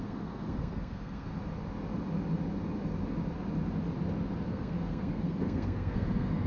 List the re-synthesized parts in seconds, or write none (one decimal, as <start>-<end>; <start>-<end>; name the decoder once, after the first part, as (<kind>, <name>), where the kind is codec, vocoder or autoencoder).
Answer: 0.0-1.3 (codec, SNAC); 4.5-6.5